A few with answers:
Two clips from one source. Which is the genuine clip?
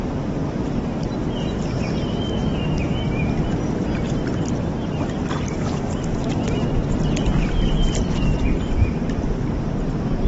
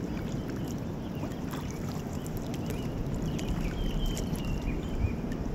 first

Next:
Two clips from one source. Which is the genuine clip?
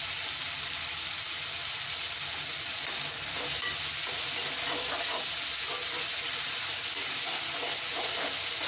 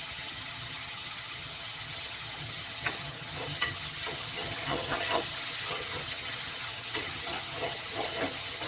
first